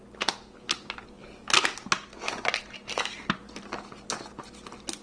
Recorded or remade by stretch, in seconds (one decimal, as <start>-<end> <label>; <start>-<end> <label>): 0.0-5.0 recorded